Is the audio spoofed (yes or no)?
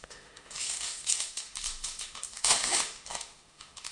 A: yes